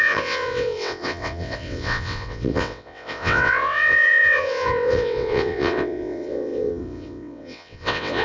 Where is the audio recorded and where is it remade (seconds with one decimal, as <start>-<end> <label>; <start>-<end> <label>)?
0.0-8.2 remade